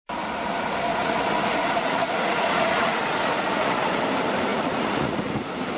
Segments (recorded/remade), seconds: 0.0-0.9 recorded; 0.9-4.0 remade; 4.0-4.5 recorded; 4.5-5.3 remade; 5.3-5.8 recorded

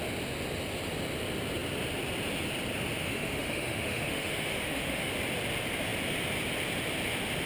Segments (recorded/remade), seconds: 0.0-3.0 recorded; 3.0-5.1 remade; 5.1-7.5 recorded

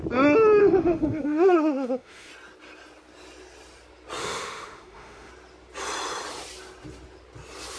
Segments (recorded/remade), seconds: 0.0-0.6 recorded; 0.6-2.3 remade; 2.3-4.2 recorded; 4.2-5.3 remade; 5.3-7.8 recorded

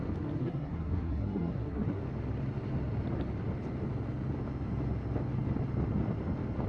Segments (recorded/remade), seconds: 0.0-0.4 recorded; 0.4-2.0 remade; 2.0-6.7 recorded

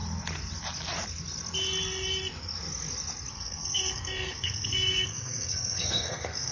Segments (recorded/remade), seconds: 0.0-3.3 recorded; 3.3-6.5 remade

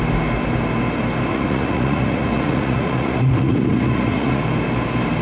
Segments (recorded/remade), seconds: 0.0-1.3 recorded; 1.3-4.4 remade; 4.4-5.2 recorded